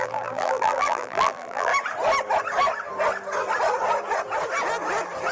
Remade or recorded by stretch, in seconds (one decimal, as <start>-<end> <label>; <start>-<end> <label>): 0.0-1.7 remade; 1.7-5.3 recorded